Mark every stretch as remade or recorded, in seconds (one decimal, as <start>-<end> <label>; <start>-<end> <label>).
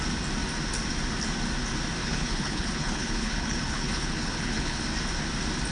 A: 0.0-2.0 recorded; 2.0-4.8 remade; 4.8-5.7 recorded